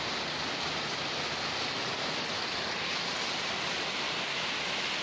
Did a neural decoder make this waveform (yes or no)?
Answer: no